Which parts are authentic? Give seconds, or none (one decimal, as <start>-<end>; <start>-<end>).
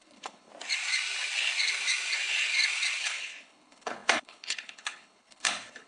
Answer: 0.5-3.0